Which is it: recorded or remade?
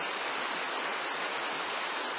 recorded